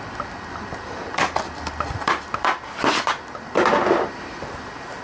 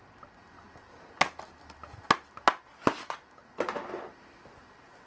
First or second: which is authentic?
second